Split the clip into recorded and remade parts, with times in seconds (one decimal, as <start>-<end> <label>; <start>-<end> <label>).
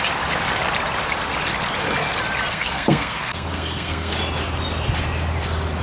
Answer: 0.0-2.5 recorded; 2.5-4.1 remade; 4.1-5.8 recorded